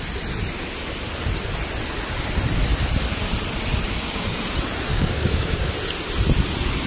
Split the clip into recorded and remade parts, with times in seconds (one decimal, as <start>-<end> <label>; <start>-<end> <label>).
0.0-3.9 recorded; 3.9-4.4 remade; 4.4-4.9 recorded; 4.9-5.7 remade; 5.7-6.9 recorded

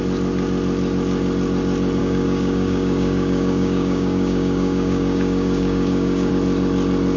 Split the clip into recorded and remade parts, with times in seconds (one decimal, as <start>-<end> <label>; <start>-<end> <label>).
0.0-2.0 recorded; 2.0-6.3 remade; 6.3-7.2 recorded